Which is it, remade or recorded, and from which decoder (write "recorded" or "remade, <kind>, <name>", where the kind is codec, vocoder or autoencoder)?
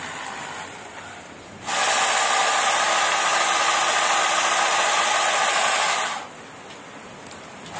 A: recorded